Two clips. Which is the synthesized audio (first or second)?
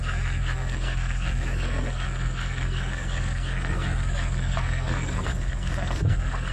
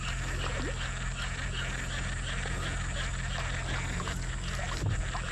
first